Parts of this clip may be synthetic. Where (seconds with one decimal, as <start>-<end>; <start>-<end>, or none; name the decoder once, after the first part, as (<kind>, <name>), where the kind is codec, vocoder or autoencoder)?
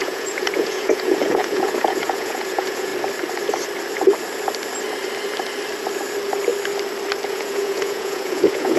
0.0-2.9 (vocoder, Vocos); 7.3-8.8